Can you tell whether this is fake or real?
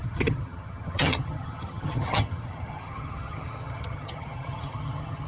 fake